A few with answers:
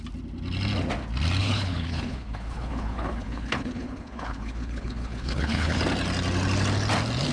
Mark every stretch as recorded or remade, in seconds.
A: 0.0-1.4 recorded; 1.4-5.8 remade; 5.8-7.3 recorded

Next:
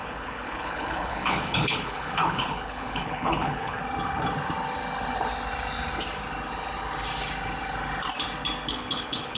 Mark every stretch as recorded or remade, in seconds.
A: 0.0-3.8 remade; 3.8-8.7 recorded; 8.7-9.4 remade

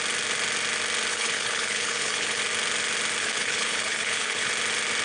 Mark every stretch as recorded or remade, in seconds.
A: 0.0-1.1 recorded; 1.1-2.4 remade; 2.4-3.2 recorded; 3.2-4.5 remade; 4.5-5.0 recorded